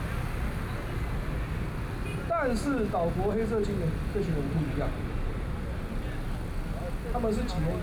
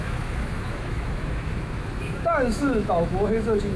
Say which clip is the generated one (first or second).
second